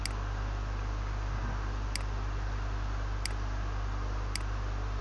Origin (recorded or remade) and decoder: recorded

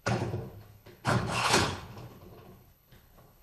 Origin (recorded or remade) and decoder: remade, codec, HILCodec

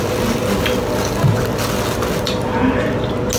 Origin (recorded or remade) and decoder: recorded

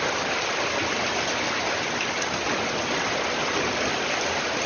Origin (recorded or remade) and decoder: remade, vocoder, BigVGAN v2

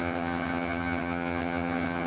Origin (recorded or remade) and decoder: remade, vocoder, HiFi-GAN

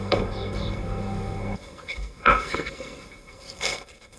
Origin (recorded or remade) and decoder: remade, codec, SNAC